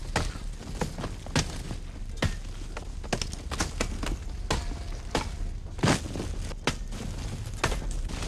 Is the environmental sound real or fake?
real